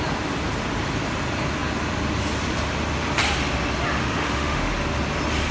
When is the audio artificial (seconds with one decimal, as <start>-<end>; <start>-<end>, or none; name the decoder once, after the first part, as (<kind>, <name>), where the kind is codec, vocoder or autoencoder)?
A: 4.0-4.7 (autoencoder, DAC-VAE)